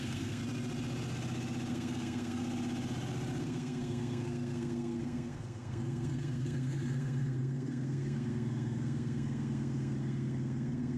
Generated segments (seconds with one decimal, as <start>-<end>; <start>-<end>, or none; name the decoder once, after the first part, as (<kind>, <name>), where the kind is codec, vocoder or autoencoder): 0.0-0.4 (codec, SNAC); 1.7-2.4; 3.4-11.0